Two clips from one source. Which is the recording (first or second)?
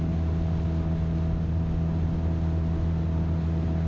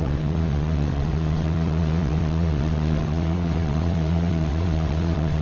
first